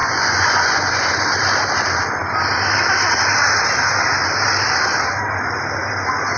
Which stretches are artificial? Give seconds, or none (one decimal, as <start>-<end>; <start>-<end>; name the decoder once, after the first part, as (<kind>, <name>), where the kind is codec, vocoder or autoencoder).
0.0-1.1 (vocoder, Vocos)